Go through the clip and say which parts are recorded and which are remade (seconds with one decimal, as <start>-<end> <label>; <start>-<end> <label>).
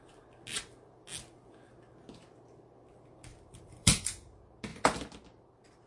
0.0-3.3 recorded; 3.3-4.0 remade; 4.0-5.9 recorded